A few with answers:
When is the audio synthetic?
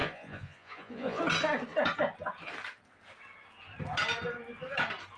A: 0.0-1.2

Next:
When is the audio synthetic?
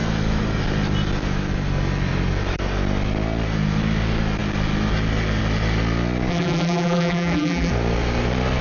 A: 6.3-7.7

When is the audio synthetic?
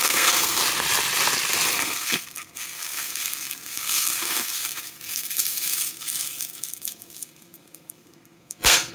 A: 0.0-0.6; 1.7-8.9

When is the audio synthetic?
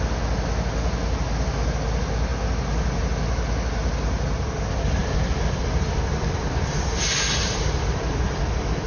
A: none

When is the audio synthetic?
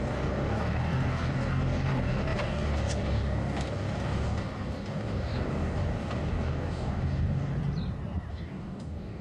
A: 0.0-7.5; 8.3-9.2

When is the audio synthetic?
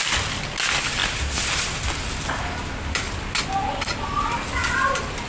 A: none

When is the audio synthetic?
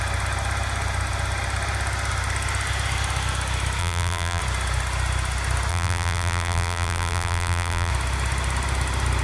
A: 3.8-4.4; 5.7-7.9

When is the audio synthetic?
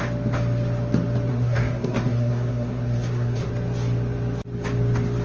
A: 1.3-3.5